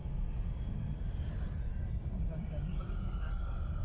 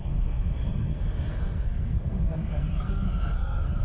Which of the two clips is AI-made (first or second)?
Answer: second